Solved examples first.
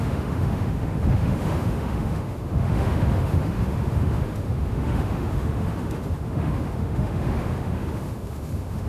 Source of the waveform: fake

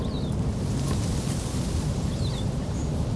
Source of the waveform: real